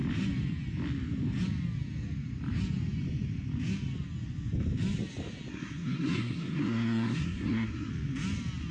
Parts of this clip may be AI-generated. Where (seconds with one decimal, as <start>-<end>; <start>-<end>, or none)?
5.5-7.9